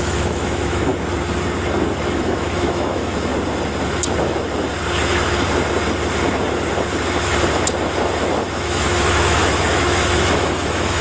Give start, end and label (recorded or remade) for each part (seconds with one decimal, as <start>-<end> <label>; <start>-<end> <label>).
0.0-0.9 remade; 0.9-2.2 recorded; 2.2-3.3 remade; 3.3-8.5 recorded; 8.5-11.0 remade

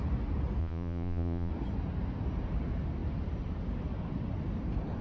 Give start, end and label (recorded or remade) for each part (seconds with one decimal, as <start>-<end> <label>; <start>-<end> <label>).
0.0-0.6 recorded; 0.6-1.5 remade; 1.5-5.0 recorded

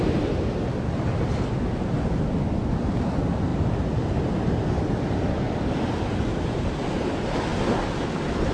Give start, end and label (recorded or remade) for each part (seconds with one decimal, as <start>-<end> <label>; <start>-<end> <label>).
0.0-8.5 recorded

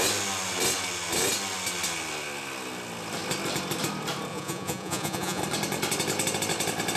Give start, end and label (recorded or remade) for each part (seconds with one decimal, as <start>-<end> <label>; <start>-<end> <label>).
0.0-4.3 recorded; 4.3-5.4 remade; 5.4-7.0 recorded

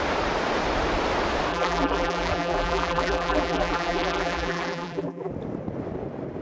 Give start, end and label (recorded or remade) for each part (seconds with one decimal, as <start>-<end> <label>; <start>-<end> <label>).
0.0-1.5 recorded; 1.5-5.3 remade; 5.3-6.4 recorded